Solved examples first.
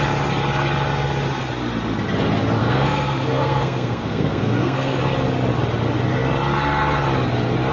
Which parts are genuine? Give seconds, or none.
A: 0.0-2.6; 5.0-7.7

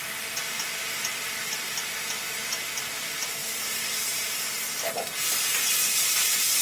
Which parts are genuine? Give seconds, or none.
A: 0.0-6.6

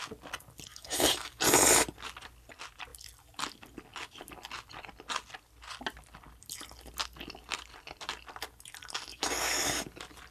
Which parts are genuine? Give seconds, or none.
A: 0.0-0.7; 1.4-9.1; 9.8-10.3

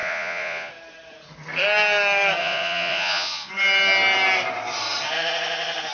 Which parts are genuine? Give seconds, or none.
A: 0.7-2.4; 3.5-5.9

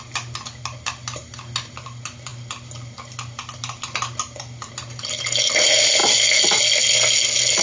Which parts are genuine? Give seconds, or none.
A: 0.0-7.6